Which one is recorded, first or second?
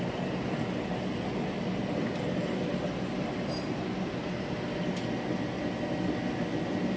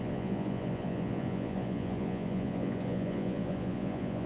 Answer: first